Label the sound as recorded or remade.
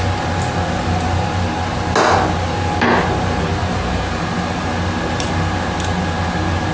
recorded